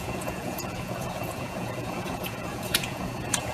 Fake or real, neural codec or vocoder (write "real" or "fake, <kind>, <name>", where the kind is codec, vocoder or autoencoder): fake, vocoder, Vocos